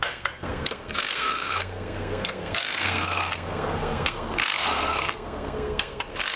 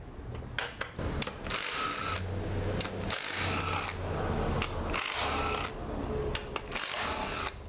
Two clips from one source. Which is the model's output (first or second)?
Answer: first